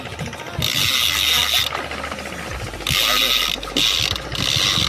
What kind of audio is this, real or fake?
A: real